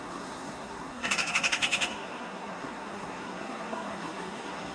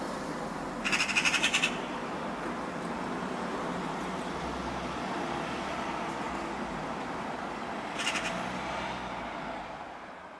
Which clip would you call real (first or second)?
second